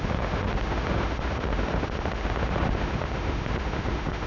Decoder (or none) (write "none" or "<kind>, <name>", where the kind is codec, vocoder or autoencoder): autoencoder, DAC-VAE